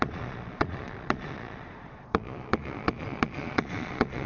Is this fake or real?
fake